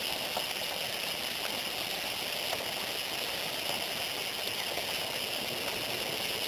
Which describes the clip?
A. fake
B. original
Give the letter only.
B